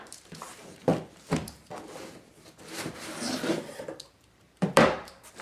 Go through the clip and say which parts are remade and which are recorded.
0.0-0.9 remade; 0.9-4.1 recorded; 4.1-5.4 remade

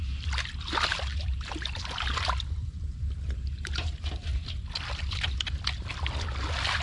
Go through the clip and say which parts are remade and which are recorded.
0.0-1.1 recorded; 1.1-4.6 remade; 4.6-6.8 recorded

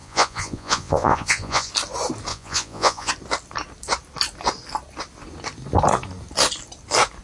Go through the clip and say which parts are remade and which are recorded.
0.0-1.7 remade; 1.7-2.3 recorded; 2.3-3.1 remade; 3.1-7.2 recorded

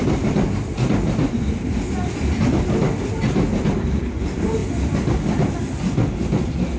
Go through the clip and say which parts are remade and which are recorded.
0.0-6.8 recorded

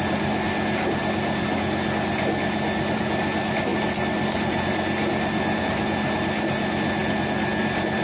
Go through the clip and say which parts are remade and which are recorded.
0.0-8.0 recorded